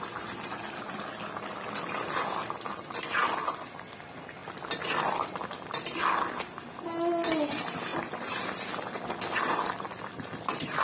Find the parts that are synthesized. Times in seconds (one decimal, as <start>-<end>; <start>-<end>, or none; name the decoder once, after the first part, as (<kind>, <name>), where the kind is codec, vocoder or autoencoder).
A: none